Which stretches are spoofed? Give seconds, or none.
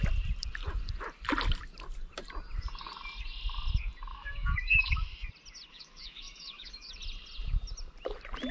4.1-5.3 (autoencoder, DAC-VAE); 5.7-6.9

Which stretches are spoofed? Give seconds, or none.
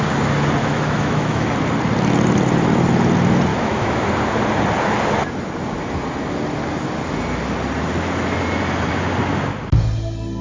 0.6-1.5 (autoencoder, DAC-VAE); 3.5-4.1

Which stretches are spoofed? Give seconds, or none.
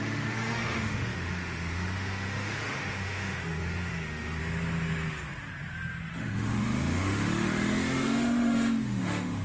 0.0-4.4 (autoencoder, DAC-VAE); 6.1-9.4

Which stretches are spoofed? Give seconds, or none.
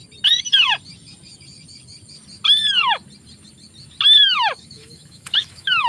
4.2-5.9 (autoencoder, DAC-VAE)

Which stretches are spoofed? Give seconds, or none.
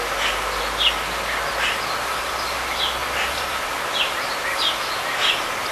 none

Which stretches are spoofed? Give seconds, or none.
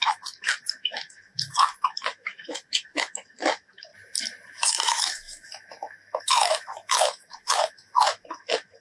0.0-3.9 (autoencoder, DAC-VAE); 4.7-8.8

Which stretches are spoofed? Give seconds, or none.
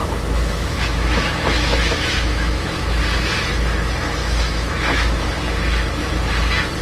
0.0-3.0 (autoencoder, DAC-VAE); 4.2-5.3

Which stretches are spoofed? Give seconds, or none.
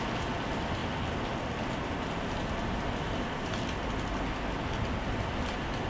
none